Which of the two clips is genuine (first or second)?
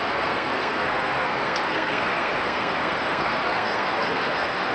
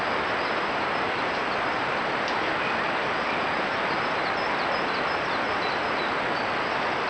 second